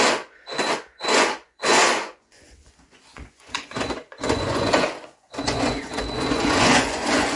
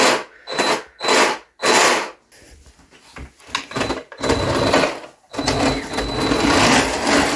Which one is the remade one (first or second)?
first